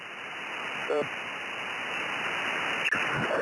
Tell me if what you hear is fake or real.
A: real